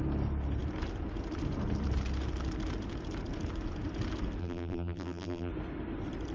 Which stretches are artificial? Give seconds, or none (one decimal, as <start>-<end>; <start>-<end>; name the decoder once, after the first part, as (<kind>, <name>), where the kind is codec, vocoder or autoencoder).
4.4-5.5 (vocoder, BigVGAN v2)